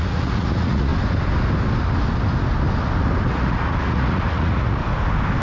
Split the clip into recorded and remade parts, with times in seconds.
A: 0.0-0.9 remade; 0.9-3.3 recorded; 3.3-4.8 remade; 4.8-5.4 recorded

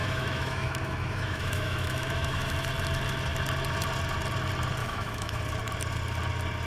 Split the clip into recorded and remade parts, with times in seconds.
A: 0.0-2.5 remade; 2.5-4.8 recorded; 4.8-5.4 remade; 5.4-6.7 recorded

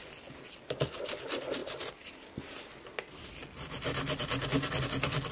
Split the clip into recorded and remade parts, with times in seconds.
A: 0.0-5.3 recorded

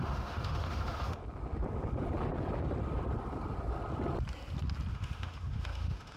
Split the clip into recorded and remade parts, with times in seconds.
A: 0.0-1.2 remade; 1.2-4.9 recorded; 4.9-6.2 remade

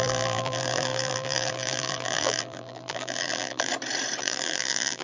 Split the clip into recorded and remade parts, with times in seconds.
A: 0.0-3.7 remade; 3.7-4.2 recorded; 4.2-5.0 remade

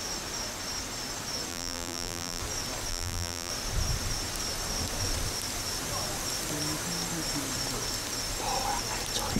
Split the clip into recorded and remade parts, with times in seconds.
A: 0.0-1.5 recorded; 1.5-2.4 remade; 2.4-2.9 recorded; 2.9-3.5 remade; 3.5-9.4 recorded

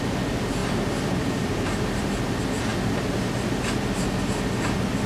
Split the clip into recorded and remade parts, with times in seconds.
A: 0.0-0.6 recorded; 0.6-2.1 remade; 2.1-2.7 recorded; 2.7-3.3 remade; 3.3-5.1 recorded

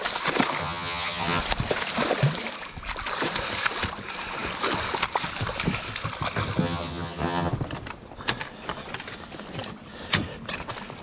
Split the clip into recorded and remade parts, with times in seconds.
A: 0.0-0.6 recorded; 0.6-1.4 remade; 1.4-6.6 recorded; 6.6-7.5 remade; 7.5-11.0 recorded